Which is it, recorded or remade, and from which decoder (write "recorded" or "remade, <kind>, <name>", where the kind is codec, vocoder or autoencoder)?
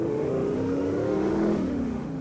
remade, autoencoder, DAC-VAE